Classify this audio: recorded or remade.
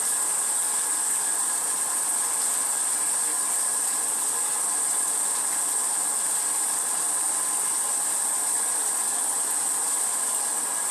recorded